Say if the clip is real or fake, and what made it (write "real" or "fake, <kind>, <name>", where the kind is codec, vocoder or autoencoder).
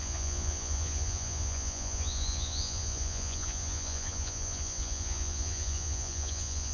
fake, vocoder, Vocos